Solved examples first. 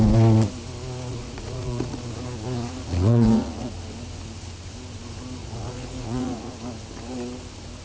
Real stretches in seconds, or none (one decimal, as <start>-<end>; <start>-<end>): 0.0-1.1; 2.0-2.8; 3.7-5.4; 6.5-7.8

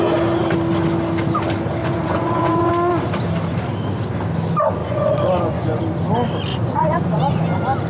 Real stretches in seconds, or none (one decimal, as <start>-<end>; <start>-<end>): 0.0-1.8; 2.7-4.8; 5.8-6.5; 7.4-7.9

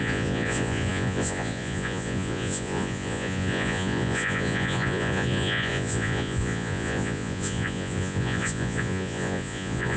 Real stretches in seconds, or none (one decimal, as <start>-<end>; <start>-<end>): none